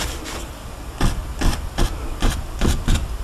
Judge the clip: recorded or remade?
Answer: recorded